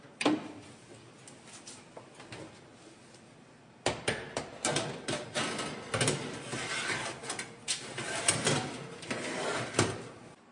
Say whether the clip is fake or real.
real